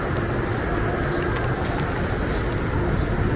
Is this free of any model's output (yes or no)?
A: yes